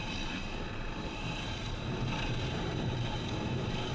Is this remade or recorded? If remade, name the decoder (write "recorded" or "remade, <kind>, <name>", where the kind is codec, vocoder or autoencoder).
remade, vocoder, BigVGAN v2